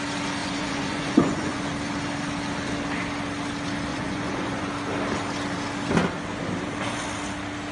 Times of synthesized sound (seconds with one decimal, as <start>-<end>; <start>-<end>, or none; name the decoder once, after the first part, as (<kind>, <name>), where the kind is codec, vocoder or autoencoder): 0.4-1.6 (vocoder, Vocos); 3.9-4.7